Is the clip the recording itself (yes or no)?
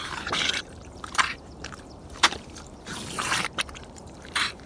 no